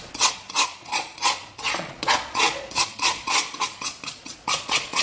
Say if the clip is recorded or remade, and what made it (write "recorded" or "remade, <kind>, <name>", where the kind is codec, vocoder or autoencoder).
remade, vocoder, Vocos